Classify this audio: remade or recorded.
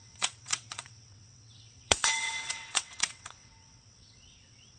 remade